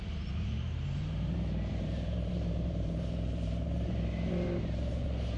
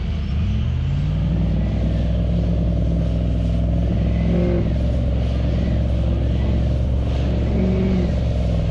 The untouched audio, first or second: second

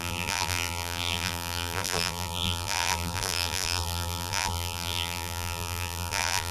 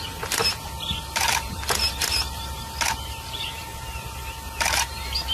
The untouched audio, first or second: second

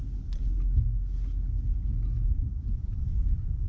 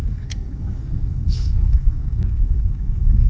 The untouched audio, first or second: first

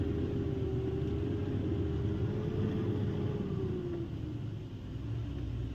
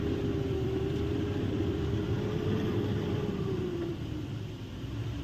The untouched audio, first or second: first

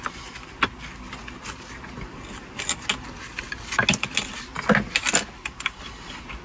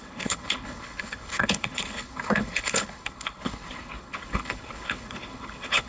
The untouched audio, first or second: first